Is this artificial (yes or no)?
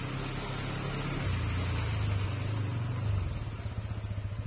no